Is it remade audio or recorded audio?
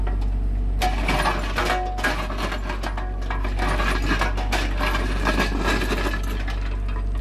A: recorded